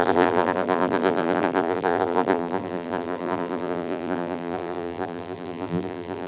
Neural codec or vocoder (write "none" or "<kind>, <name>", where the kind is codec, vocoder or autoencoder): vocoder, BigVGAN v2